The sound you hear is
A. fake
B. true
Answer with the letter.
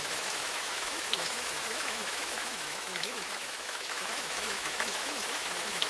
A